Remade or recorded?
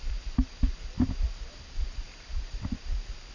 recorded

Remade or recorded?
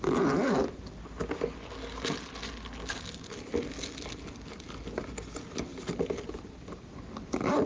recorded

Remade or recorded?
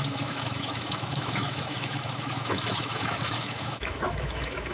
remade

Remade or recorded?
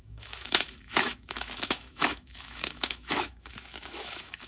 remade